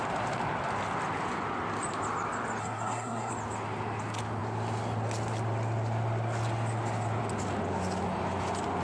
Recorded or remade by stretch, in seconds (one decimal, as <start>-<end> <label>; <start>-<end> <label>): 0.0-2.6 recorded; 2.6-3.3 remade; 3.3-8.8 recorded